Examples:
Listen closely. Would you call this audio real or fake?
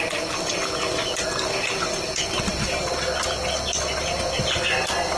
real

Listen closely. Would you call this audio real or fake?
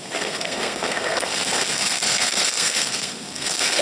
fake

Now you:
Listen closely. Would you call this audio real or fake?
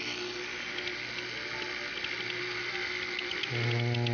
real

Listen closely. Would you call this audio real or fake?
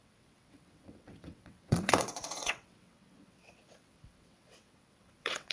fake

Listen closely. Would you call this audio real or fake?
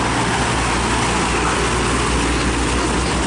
real